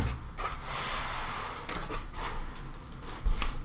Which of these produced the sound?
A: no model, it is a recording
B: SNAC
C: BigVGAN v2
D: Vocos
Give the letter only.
C